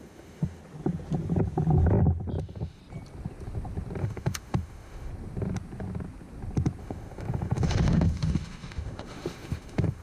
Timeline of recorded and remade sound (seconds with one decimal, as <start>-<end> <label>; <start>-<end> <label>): 0.0-0.6 remade; 0.6-2.4 recorded; 2.4-2.8 remade; 2.8-4.0 recorded; 4.0-5.1 remade; 5.1-6.8 recorded; 6.8-10.0 remade